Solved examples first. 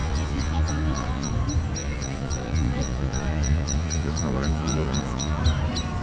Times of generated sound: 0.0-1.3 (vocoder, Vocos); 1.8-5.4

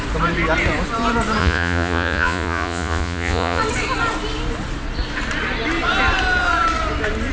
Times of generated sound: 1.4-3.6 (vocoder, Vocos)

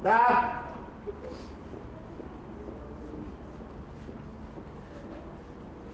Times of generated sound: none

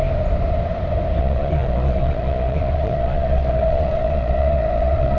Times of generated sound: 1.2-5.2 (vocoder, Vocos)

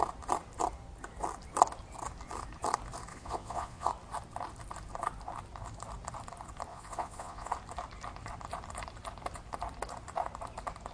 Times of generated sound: 3.1-3.9 (vocoder, Vocos); 6.7-7.5